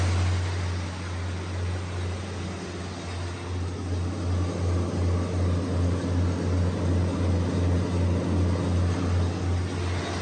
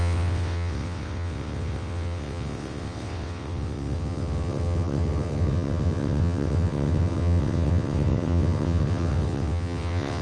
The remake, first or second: second